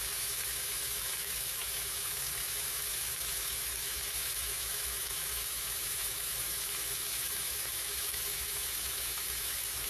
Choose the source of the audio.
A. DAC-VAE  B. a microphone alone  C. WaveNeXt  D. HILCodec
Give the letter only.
A